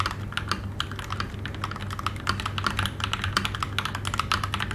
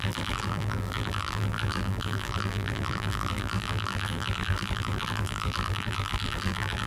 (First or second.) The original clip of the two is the first